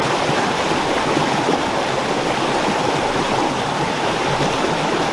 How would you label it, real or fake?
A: real